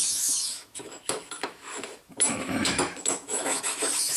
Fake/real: fake